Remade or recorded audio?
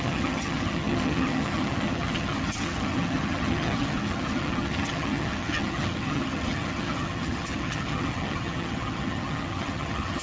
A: remade